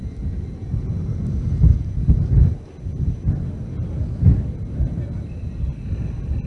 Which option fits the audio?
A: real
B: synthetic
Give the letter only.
A